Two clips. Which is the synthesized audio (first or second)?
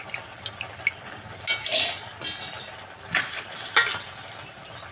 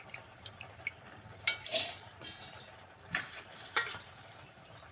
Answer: second